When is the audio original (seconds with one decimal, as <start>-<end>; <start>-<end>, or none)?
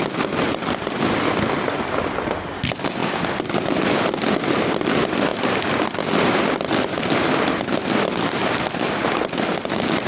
0.0-10.1